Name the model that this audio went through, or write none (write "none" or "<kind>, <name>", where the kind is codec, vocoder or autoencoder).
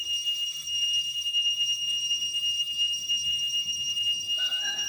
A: codec, SNAC